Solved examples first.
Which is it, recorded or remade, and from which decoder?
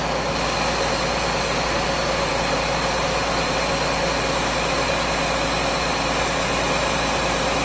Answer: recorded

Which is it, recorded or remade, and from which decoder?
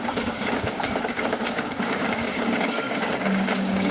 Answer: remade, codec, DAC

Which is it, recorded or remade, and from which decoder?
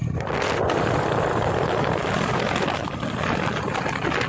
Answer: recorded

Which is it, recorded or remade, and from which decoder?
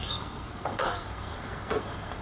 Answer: remade, codec, SNAC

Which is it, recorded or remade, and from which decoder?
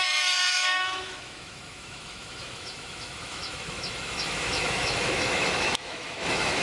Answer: remade, autoencoder, DAC-VAE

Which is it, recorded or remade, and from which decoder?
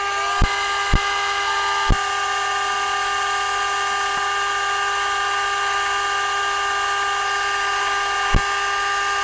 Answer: recorded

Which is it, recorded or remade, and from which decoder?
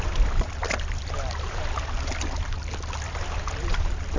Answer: recorded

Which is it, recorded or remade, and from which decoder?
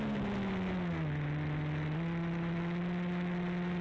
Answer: recorded